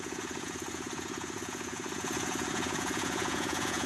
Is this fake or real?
fake